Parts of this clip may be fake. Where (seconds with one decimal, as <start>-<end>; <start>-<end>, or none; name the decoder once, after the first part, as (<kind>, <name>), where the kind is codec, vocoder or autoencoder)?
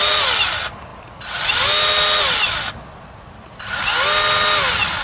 none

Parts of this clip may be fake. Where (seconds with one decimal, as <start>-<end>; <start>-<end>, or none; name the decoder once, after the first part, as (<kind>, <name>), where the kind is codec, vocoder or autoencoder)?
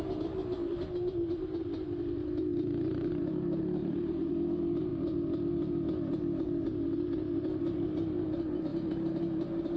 2.5-3.1 (vocoder, BigVGAN v2); 3.8-4.3; 8.7-9.2